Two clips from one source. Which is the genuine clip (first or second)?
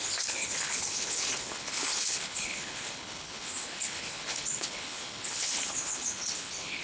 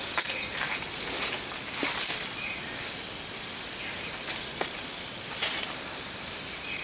second